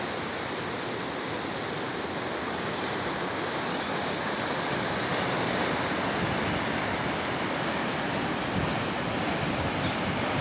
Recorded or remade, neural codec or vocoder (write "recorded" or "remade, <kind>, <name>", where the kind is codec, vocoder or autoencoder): recorded